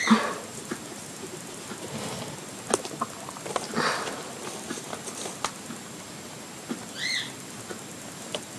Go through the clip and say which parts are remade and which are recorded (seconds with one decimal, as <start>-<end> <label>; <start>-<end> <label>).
0.0-8.6 recorded